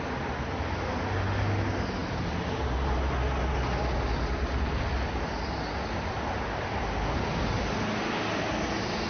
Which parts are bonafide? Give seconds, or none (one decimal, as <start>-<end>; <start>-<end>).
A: 0.0-9.1